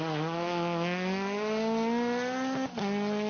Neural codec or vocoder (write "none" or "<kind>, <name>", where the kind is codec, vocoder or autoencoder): none